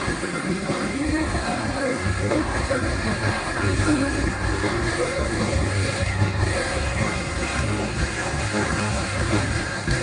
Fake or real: fake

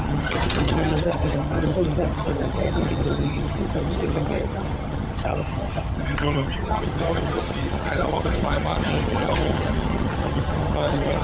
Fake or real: fake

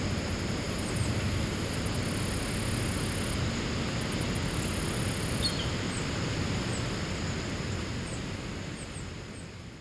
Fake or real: real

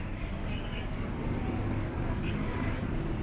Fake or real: fake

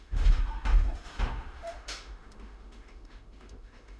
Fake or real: fake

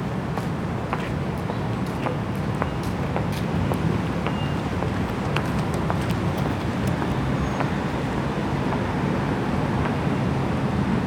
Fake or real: real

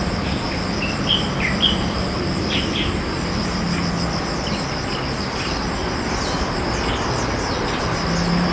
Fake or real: real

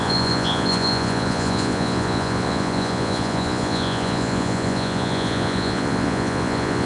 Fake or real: fake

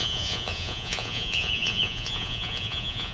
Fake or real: fake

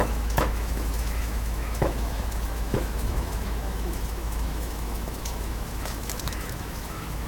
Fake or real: fake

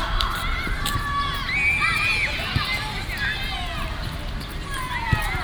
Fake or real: real